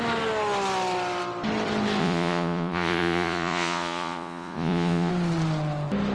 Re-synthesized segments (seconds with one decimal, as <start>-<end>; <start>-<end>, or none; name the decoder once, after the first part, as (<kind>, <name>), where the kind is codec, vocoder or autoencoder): 2.0-5.1 (vocoder, Vocos)